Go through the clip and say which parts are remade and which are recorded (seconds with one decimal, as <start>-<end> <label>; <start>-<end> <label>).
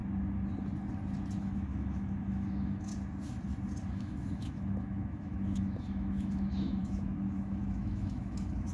0.0-1.4 recorded; 1.4-2.9 remade; 2.9-3.9 recorded; 3.9-8.7 remade